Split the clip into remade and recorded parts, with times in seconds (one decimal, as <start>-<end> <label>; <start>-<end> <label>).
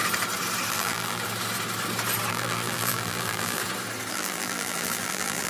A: 0.0-0.7 recorded; 0.7-1.2 remade; 1.2-2.3 recorded; 2.3-3.6 remade; 3.6-4.1 recorded; 4.1-5.5 remade